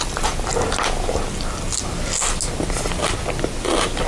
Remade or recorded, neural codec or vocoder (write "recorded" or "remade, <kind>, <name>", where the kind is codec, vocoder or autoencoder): recorded